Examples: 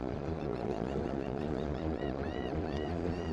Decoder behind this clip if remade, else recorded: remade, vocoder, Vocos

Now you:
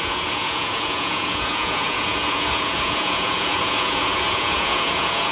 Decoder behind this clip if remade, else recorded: remade, vocoder, Vocos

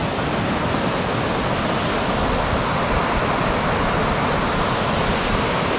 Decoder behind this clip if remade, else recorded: recorded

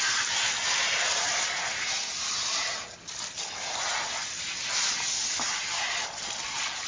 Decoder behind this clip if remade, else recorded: recorded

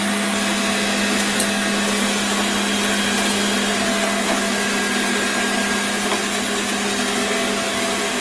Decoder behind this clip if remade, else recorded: recorded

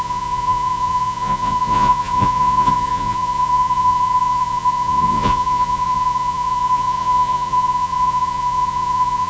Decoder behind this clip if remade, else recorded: remade, vocoder, Vocos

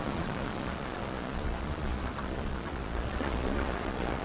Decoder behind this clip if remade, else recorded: remade, vocoder, Vocos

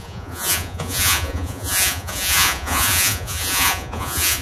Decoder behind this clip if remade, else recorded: remade, vocoder, Vocos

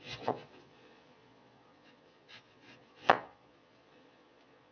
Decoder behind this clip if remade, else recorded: remade, vocoder, Vocos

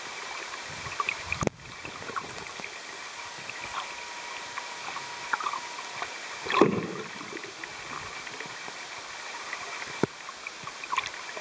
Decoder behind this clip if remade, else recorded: recorded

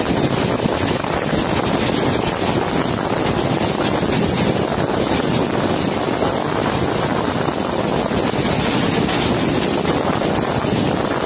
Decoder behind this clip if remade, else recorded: recorded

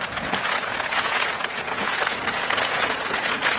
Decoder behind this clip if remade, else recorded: remade, vocoder, Vocos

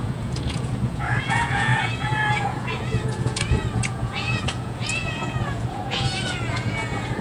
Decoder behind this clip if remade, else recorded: remade, vocoder, Vocos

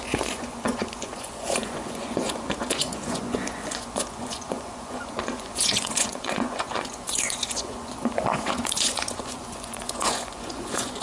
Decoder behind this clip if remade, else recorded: remade, vocoder, Vocos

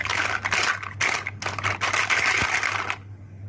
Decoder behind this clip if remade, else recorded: recorded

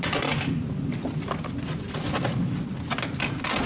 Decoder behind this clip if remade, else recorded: recorded